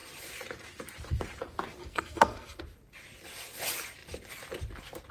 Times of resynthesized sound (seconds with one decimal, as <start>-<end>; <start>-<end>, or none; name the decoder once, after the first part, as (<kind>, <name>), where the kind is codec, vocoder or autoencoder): 1.8-2.6 (codec, SNAC)